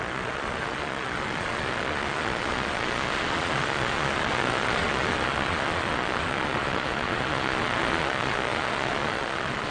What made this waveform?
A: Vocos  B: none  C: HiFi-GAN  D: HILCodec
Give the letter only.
A